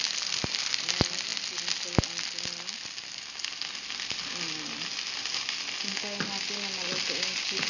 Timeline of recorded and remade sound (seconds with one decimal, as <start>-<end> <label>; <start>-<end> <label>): 0.0-7.7 recorded